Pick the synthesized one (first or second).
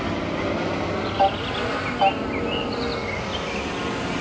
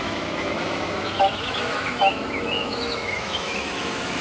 second